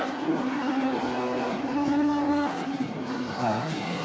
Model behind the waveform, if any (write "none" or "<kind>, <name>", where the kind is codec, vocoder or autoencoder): codec, SNAC